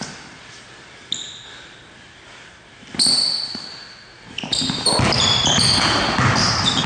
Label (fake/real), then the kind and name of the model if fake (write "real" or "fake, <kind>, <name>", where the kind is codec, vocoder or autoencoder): real